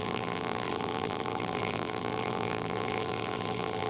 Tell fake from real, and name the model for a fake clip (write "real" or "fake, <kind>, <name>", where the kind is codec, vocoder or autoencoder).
fake, vocoder, BigVGAN v2